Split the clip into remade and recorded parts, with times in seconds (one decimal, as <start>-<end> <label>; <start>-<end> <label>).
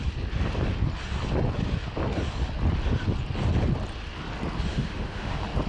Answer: 0.0-4.7 recorded; 4.7-5.3 remade; 5.3-5.7 recorded